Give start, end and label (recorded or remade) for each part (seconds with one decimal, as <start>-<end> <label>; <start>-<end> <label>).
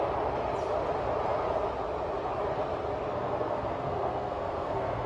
0.0-3.1 recorded; 3.1-5.1 remade